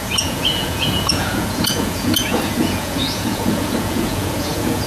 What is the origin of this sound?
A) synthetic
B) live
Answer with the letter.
A